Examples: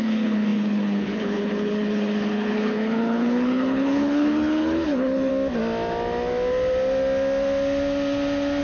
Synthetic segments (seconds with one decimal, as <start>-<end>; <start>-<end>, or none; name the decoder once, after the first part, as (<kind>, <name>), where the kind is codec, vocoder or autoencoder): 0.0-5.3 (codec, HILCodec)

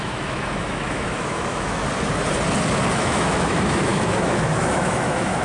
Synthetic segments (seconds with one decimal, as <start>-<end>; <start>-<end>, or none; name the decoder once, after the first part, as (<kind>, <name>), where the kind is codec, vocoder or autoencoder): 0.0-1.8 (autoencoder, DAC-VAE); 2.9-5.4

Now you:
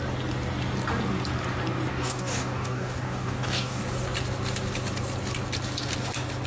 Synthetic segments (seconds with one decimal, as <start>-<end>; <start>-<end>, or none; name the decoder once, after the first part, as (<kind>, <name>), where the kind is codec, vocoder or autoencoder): 1.9-3.8 (codec, DAC)

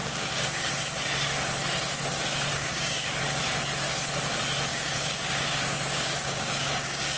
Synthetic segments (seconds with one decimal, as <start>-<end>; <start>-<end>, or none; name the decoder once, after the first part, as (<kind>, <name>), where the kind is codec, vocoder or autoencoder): 0.0-0.7 (codec, DAC); 2.5-3.2; 4.7-7.2